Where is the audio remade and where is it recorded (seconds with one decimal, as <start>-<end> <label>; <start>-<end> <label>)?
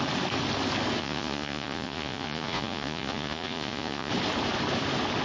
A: 0.0-1.0 recorded; 1.0-4.1 remade; 4.1-5.2 recorded